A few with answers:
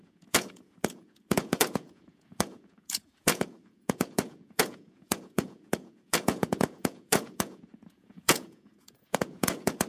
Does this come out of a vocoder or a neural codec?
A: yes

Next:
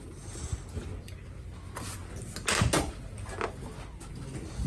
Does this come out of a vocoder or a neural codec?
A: no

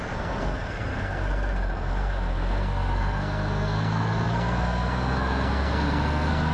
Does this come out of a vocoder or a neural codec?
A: yes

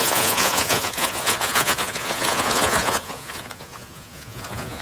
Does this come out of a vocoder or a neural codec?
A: yes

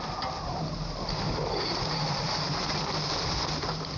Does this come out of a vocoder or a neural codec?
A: no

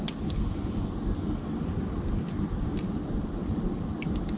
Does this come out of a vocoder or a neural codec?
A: no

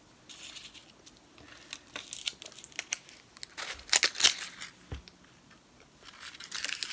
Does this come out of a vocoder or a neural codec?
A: no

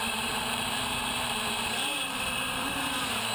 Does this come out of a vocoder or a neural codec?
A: yes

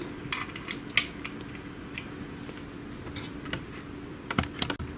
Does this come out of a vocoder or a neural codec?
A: no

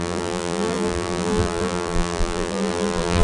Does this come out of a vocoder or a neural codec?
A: yes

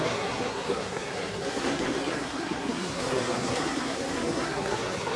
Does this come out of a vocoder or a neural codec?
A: yes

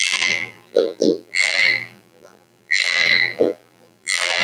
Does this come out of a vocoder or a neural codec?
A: yes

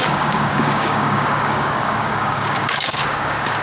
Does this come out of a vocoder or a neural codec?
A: yes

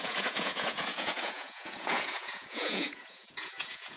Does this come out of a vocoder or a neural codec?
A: yes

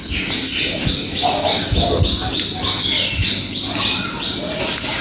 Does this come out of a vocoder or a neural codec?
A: no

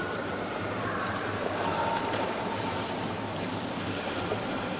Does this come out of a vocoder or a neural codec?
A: yes